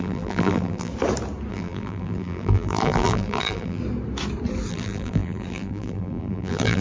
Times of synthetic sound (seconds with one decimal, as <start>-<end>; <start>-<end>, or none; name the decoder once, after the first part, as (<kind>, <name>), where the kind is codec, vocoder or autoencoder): 0.0-0.9 (vocoder, BigVGAN v2); 1.5-3.8; 4.7-6.8